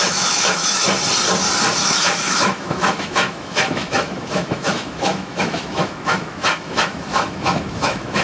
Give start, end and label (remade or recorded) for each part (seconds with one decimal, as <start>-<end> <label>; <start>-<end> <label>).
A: 0.0-0.8 remade; 0.8-1.9 recorded; 1.9-8.2 remade